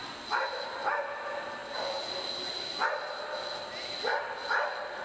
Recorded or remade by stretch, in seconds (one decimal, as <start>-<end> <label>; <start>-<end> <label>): 0.0-5.0 recorded